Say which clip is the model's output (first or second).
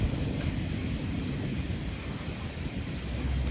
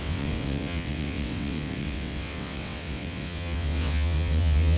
second